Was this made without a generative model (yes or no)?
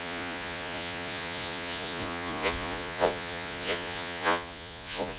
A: no